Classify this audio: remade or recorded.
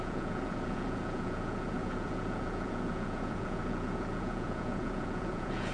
remade